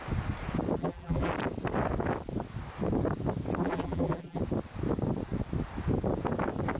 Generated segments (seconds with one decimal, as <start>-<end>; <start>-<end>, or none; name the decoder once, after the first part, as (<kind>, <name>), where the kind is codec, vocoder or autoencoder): 0.8-1.3 (vocoder, BigVGAN v2); 3.6-4.4